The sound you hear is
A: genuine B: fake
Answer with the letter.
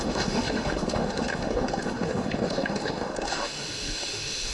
B